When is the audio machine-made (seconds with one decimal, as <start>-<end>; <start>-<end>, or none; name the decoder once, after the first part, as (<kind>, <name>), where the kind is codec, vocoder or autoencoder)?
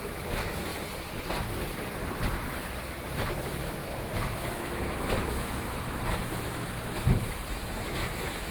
0.0-0.7 (autoencoder, DAC-VAE); 2.8-8.5